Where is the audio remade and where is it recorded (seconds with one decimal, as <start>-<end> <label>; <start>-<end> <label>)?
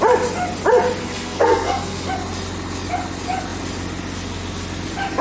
0.0-1.0 recorded; 1.0-2.1 remade; 2.1-5.2 recorded